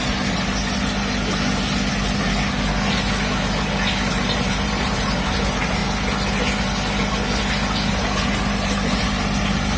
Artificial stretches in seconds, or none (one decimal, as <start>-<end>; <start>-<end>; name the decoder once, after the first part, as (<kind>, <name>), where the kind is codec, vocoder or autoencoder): 0.0-0.6 (vocoder, BigVGAN v2); 4.1-5.8; 7.9-9.8